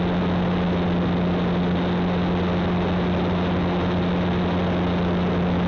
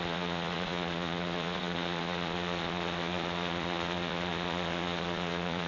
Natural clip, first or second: first